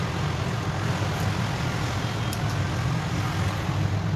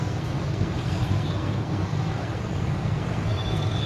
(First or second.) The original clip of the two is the first